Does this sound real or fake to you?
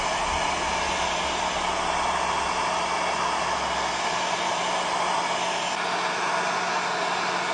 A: real